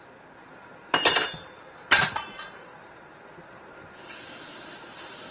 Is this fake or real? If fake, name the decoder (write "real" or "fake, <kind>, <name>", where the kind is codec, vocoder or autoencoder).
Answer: fake, vocoder, BigVGAN v2